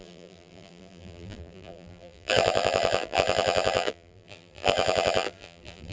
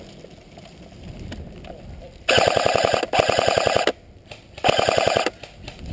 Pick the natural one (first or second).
second